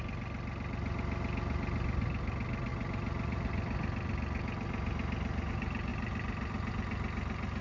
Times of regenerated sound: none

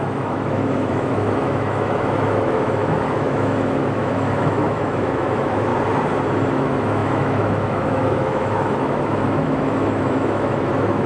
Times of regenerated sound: 0.0-5.7 (autoencoder, DAC-VAE); 6.5-11.1

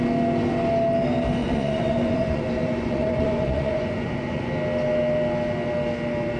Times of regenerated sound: 1.4-4.5 (vocoder, Vocos)